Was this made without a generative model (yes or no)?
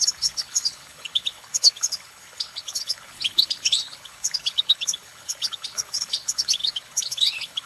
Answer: no